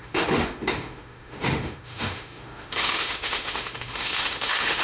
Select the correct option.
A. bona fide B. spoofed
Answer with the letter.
B